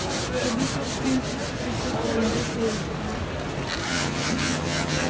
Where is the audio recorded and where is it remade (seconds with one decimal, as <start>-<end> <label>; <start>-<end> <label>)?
0.0-3.9 recorded; 3.9-5.1 remade